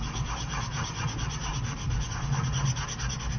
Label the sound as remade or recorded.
recorded